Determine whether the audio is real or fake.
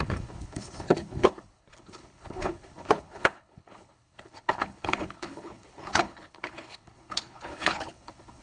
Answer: fake